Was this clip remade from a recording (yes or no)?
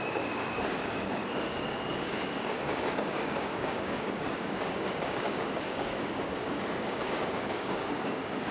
yes